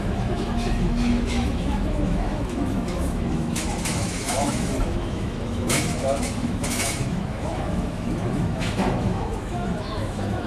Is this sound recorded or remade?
remade